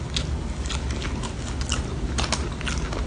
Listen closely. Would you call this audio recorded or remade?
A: recorded